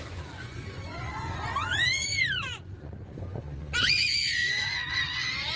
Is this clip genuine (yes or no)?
no